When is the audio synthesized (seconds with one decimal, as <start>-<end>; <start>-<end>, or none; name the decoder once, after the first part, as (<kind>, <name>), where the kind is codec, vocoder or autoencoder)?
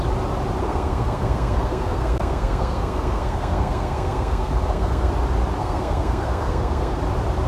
0.6-5.1 (codec, SNAC); 5.6-7.0